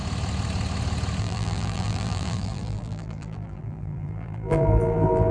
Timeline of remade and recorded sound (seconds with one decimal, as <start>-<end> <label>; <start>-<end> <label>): 0.0-1.2 recorded; 1.2-5.3 remade